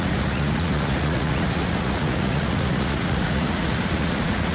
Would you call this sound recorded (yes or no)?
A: no